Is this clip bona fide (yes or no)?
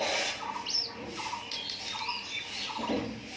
yes